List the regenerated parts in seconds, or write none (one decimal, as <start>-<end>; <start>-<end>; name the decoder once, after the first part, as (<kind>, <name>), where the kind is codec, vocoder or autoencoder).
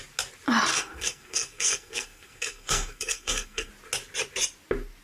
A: 0.7-3.7 (codec, SNAC)